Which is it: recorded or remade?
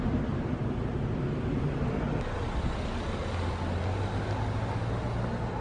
recorded